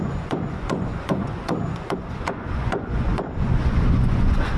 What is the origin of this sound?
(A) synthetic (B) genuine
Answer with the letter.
A